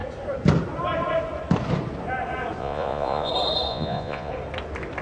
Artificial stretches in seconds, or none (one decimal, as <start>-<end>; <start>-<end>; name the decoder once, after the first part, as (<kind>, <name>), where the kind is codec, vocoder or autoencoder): 2.6-3.3 (vocoder, Vocos); 3.7-4.3